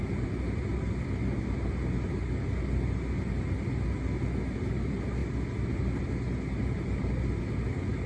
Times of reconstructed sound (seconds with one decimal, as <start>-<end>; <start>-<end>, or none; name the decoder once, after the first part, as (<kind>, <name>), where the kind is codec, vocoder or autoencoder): none